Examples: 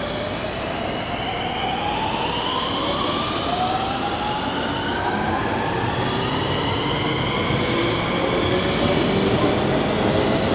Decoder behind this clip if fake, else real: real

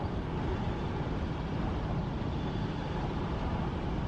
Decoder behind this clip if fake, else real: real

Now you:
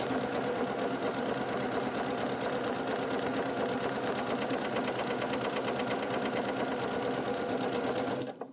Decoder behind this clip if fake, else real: real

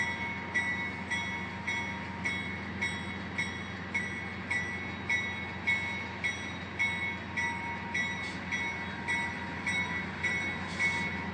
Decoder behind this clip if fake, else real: real